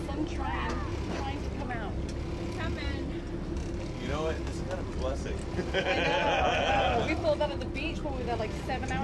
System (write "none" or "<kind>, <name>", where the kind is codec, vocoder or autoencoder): none